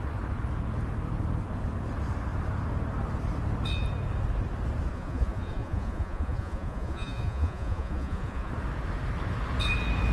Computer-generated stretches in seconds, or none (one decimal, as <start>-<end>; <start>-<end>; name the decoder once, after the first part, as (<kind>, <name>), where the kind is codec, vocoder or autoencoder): 4.9-8.5 (vocoder, Vocos)